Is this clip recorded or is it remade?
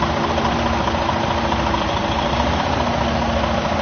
recorded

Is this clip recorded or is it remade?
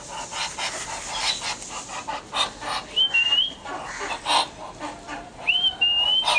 recorded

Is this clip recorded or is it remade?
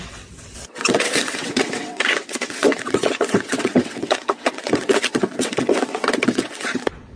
remade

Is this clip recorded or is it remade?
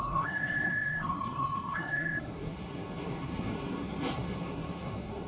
remade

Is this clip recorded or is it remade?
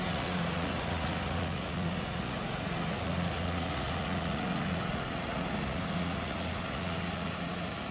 remade